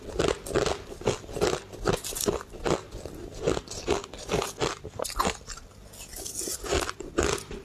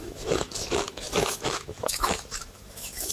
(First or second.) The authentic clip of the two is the first